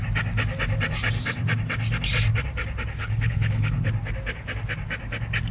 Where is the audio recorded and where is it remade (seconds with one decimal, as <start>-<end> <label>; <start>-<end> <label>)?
0.0-3.0 recorded; 3.0-3.9 remade; 3.9-5.5 recorded